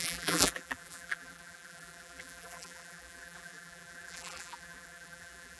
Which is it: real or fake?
fake